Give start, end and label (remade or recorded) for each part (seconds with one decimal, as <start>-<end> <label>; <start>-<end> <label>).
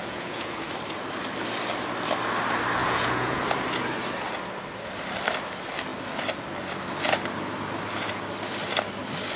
0.0-0.7 remade; 0.7-2.8 recorded; 2.8-3.4 remade; 3.4-9.4 recorded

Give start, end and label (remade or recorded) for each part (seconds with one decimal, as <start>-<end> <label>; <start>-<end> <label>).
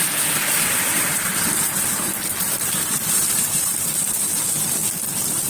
0.0-1.8 remade; 1.8-2.3 recorded; 2.3-3.9 remade; 3.9-5.5 recorded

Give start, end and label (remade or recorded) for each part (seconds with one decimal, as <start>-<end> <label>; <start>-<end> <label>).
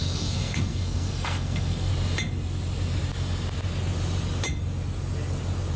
0.0-1.9 remade; 1.9-5.8 recorded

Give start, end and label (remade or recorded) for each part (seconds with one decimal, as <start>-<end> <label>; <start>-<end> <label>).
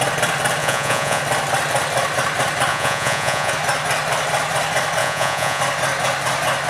0.0-0.6 recorded; 0.6-1.2 remade; 1.2-2.7 recorded; 2.7-3.5 remade; 3.5-5.0 recorded; 5.0-5.6 remade; 5.6-6.7 recorded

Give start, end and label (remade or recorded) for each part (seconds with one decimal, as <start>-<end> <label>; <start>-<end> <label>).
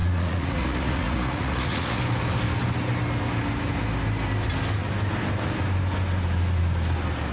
0.0-2.0 remade; 2.0-7.3 recorded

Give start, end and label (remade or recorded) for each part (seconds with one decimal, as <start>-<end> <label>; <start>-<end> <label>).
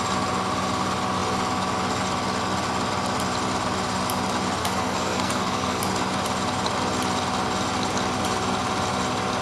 0.0-4.6 recorded; 4.6-5.8 remade; 5.8-9.4 recorded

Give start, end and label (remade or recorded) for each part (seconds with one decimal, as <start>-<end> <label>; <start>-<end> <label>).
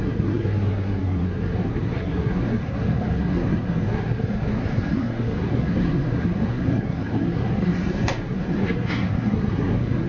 0.0-10.1 remade